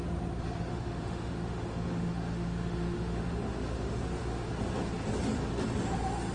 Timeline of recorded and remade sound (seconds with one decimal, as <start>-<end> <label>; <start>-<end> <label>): 0.0-0.7 recorded; 0.7-4.5 remade; 4.5-6.3 recorded